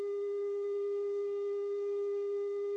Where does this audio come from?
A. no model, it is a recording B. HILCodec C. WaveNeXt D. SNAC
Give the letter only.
D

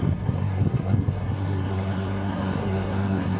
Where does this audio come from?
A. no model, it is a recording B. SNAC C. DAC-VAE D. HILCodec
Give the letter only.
B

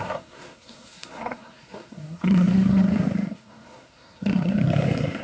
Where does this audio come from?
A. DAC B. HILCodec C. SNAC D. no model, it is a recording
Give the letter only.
C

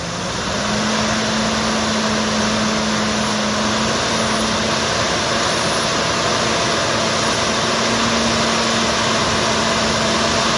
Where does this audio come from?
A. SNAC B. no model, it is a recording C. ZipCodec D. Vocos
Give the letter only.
B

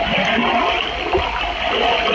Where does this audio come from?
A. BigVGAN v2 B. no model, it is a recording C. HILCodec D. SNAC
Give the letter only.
B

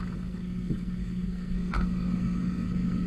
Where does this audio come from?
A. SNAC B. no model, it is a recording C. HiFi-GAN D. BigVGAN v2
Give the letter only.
A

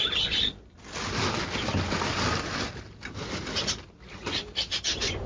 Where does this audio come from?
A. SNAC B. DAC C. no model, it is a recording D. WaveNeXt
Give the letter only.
C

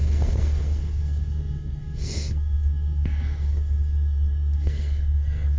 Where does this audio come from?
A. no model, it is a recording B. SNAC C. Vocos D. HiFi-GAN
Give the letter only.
B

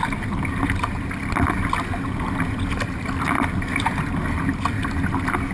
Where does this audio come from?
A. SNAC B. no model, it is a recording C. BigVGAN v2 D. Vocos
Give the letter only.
B